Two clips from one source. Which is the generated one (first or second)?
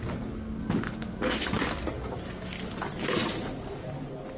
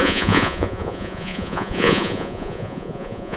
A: second